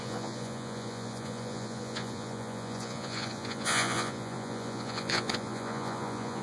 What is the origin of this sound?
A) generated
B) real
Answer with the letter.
A